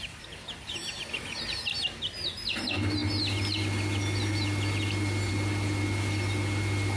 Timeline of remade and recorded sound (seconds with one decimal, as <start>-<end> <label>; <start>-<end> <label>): 0.0-7.0 recorded